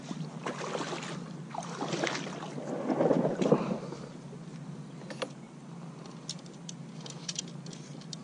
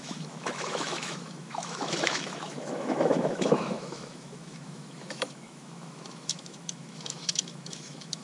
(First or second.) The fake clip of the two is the second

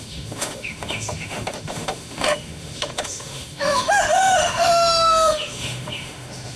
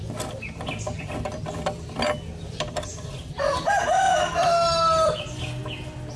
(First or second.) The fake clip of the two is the first